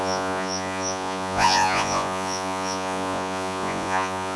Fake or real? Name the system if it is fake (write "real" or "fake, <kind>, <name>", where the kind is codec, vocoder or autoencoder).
fake, vocoder, Vocos